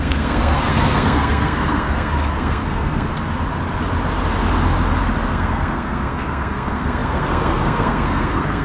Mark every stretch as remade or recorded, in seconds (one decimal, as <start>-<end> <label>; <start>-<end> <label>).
0.0-3.1 remade; 3.1-5.3 recorded; 5.3-8.6 remade